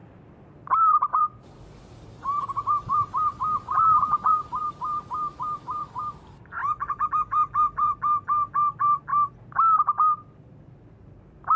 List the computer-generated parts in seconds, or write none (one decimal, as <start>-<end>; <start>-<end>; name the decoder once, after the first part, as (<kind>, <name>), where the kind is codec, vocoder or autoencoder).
0.0-3.7 (vocoder, BigVGAN v2); 4.6-6.6; 7.1-9.1; 11.2-11.6